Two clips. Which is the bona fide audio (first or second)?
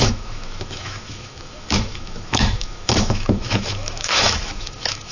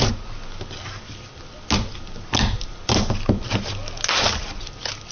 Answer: second